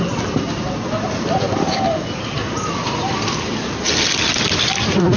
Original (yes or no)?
yes